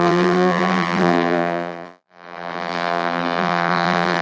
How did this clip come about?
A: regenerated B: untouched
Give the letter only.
A